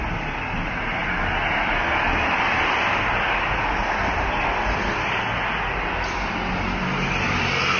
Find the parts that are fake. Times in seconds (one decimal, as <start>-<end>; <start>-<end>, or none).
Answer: none